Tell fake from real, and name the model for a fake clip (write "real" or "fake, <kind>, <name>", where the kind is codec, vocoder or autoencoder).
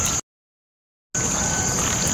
real